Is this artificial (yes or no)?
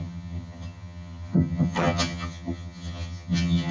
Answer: yes